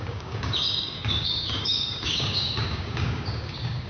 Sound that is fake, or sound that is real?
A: fake